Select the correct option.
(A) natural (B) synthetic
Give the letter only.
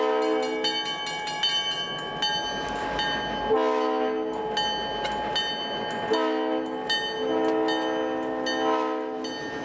A